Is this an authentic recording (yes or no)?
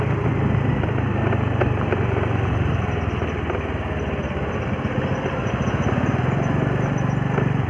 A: yes